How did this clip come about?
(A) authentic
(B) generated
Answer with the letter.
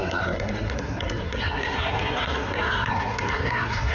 B